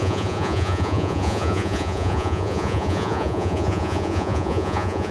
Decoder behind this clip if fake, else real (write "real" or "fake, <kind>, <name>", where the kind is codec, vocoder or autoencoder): fake, vocoder, Vocos